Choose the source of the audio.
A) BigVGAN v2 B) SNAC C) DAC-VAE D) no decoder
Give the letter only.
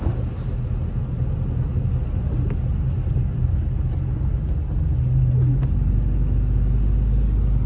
D